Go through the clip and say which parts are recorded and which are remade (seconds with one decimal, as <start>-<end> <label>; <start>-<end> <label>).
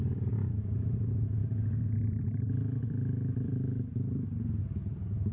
0.0-1.4 recorded; 1.4-4.6 remade; 4.6-5.3 recorded